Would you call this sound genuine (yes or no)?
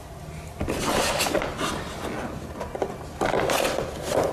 yes